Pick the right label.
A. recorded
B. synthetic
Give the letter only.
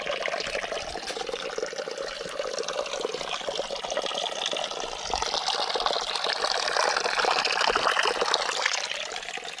A